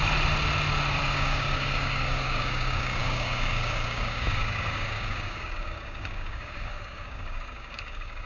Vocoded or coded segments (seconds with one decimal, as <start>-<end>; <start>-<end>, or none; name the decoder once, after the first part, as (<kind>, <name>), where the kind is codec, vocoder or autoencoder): 1.0-8.3 (codec, DAC)